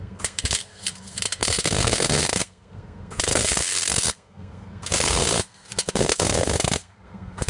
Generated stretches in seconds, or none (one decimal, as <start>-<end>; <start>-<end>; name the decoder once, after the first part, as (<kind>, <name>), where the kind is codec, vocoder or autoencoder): 0.0-7.5 (codec, SNAC)